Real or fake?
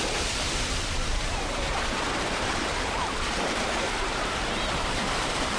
fake